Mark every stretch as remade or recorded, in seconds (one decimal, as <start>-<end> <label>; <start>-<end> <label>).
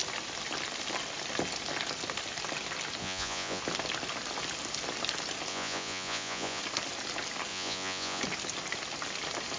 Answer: 0.0-3.0 recorded; 3.0-3.6 remade; 3.6-5.5 recorded; 5.5-6.6 remade; 6.6-7.5 recorded; 7.5-8.2 remade; 8.2-9.6 recorded